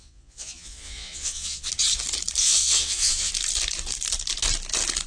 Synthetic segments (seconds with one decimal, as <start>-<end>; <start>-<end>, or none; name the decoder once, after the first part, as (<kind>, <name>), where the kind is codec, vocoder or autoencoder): 0.0-1.7 (vocoder, Vocos); 2.4-3.3